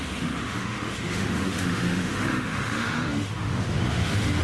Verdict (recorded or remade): remade